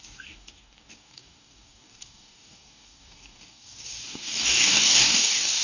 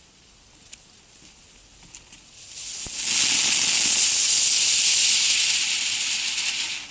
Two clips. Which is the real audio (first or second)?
second